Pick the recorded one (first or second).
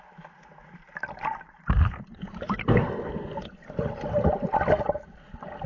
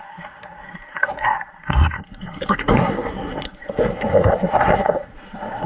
first